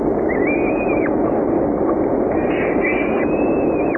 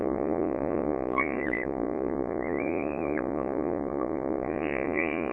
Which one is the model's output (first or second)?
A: second